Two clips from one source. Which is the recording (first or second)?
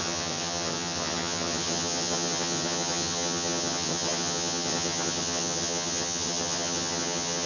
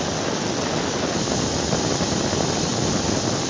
second